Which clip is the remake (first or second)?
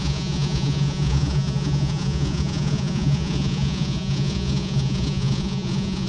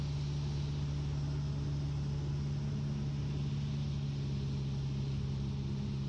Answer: first